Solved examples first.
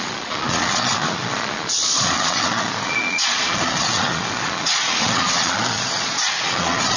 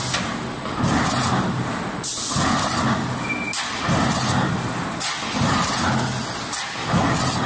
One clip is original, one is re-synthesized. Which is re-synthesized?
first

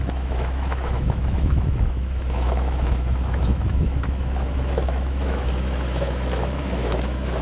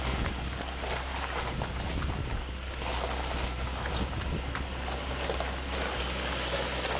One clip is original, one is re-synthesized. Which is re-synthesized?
first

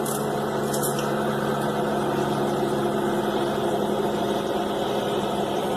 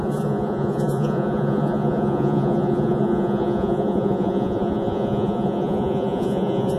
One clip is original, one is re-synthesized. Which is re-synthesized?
second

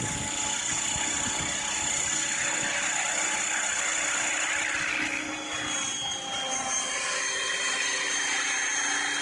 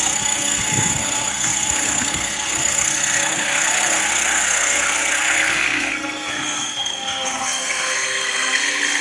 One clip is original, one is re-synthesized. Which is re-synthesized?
second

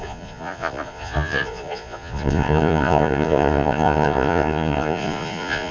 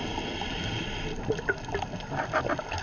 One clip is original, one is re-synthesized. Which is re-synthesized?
first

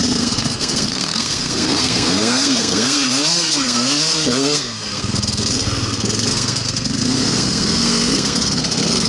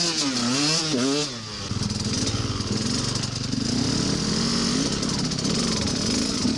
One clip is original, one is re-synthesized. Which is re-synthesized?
first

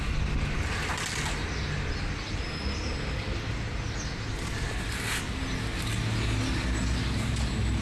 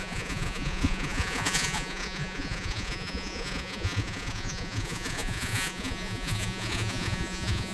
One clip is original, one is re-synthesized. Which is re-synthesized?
second